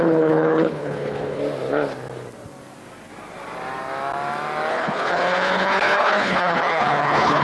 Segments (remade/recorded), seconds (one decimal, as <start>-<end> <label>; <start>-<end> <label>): 0.0-1.4 remade; 1.4-4.7 recorded; 4.7-7.4 remade